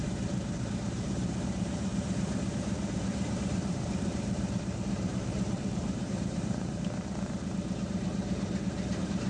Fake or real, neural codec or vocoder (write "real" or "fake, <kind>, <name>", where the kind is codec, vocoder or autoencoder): fake, vocoder, BigVGAN v2